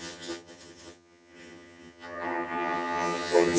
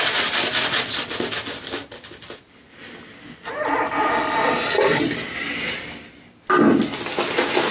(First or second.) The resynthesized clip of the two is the first